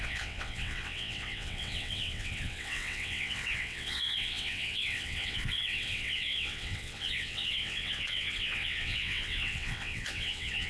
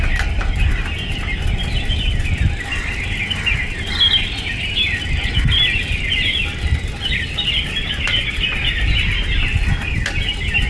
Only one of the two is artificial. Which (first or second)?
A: first